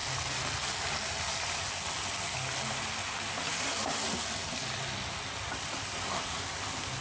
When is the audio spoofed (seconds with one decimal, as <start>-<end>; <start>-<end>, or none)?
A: none